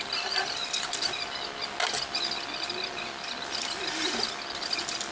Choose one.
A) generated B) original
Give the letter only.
B